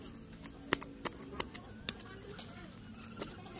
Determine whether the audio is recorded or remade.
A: recorded